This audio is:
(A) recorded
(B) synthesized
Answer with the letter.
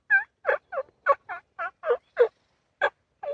A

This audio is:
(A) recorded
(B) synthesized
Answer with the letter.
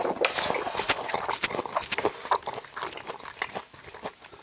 A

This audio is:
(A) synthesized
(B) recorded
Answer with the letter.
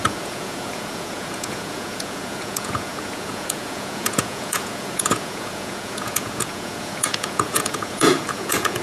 A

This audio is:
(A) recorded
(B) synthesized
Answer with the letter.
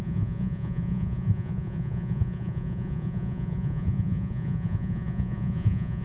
B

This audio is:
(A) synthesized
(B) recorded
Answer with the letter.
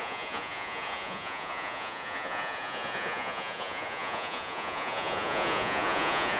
A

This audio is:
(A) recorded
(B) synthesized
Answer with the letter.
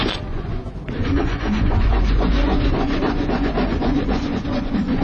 B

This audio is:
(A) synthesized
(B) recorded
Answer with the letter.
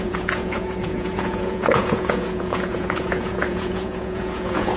A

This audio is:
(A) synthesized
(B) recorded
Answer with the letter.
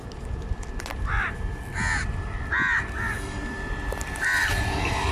B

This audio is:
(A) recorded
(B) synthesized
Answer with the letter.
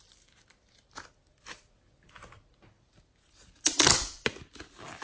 A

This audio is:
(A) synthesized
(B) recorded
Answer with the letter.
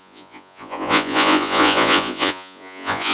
A